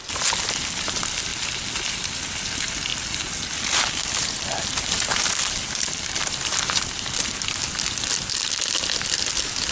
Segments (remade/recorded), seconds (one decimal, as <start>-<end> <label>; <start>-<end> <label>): 0.0-9.7 recorded